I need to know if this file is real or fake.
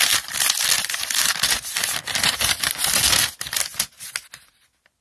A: real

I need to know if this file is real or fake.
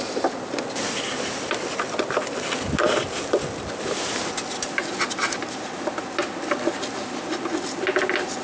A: real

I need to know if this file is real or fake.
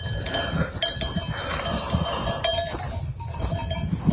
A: real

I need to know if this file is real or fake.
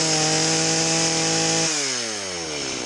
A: real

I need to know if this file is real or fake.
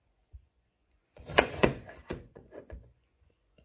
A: fake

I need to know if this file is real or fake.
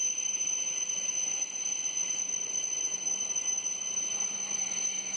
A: real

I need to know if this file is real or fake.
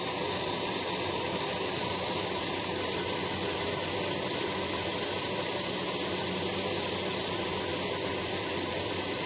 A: real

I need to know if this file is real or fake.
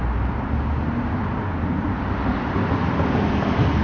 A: real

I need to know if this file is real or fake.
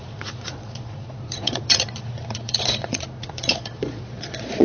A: fake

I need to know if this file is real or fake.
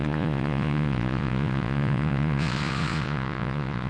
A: fake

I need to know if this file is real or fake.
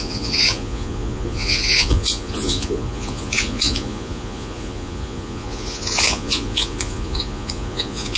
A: fake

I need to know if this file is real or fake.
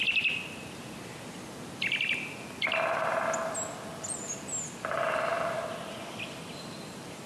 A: real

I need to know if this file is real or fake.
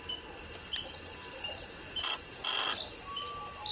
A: real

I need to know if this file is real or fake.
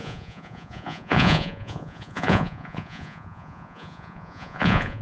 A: fake